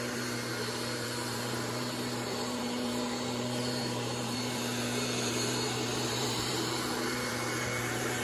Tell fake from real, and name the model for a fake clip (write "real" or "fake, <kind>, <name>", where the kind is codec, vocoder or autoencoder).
fake, vocoder, BigVGAN v2